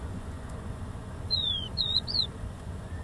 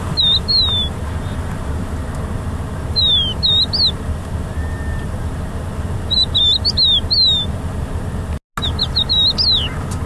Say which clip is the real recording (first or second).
second